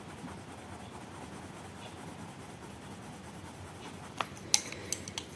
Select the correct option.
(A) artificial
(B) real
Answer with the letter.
B